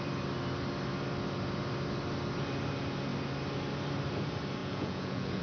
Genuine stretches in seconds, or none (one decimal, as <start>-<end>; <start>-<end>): 0.0-4.6